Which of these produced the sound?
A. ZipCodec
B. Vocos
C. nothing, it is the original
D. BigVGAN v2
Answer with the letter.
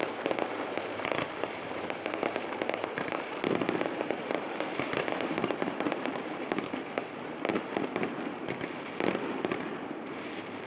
D